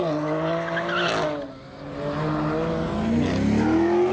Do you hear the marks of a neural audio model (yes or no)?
no